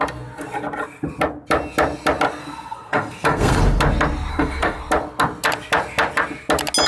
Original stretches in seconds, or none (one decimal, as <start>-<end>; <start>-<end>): 0.0-2.4; 3.6-4.3; 4.8-6.9